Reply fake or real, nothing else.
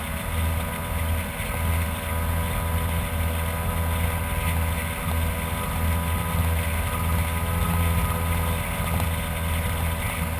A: real